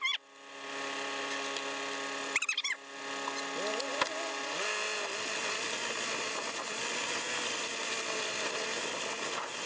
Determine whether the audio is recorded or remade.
recorded